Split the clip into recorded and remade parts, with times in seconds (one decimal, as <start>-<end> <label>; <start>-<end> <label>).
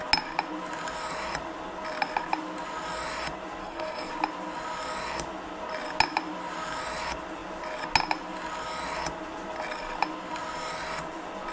0.0-3.6 recorded; 3.6-4.1 remade; 4.1-11.5 recorded